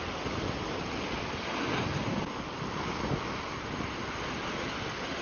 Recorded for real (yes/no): yes